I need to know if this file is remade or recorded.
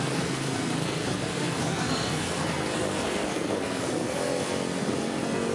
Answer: remade